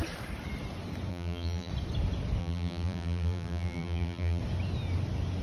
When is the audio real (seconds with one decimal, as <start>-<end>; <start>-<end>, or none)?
0.0-1.1; 1.7-2.4; 4.4-5.4